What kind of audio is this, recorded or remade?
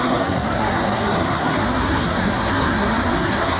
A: remade